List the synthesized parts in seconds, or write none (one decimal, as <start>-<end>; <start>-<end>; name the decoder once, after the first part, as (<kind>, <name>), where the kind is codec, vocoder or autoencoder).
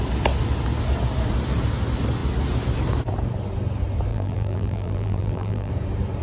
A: 4.1-5.7 (vocoder, BigVGAN v2)